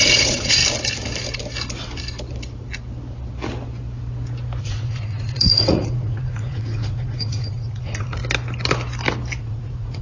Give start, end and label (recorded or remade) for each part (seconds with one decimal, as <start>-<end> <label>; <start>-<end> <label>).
0.0-0.6 remade; 0.6-4.6 recorded; 4.6-8.2 remade; 8.2-9.4 recorded; 9.4-10.0 remade